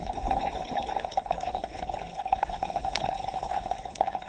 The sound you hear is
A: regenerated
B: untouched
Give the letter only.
A